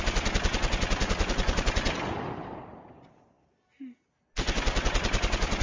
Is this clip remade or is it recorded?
recorded